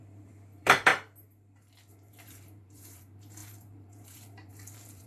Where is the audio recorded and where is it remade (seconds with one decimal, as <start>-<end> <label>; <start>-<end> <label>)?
0.0-0.9 remade; 0.9-1.9 recorded; 1.9-5.1 remade